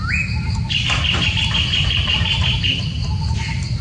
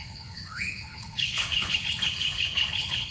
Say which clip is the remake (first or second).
second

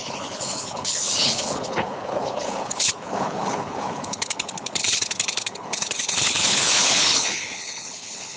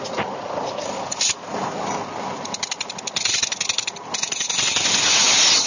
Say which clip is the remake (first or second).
first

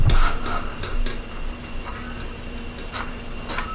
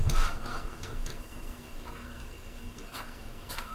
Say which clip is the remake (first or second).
second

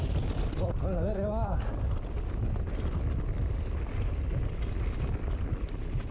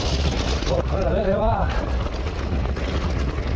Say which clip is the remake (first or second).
second